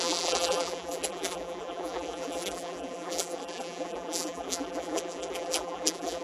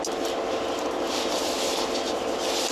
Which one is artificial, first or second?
first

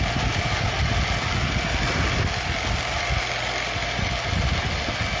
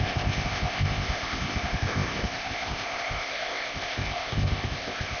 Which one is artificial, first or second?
second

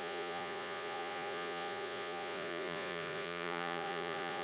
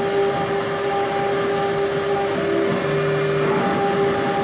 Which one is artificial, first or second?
first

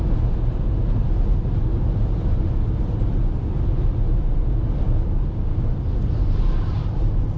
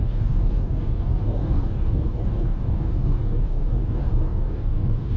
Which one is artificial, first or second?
second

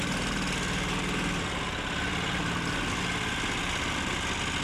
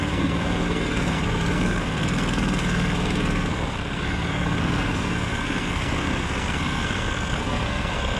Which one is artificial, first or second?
second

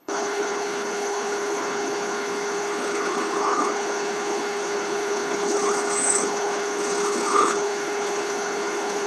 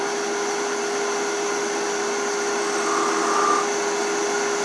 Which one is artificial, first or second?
first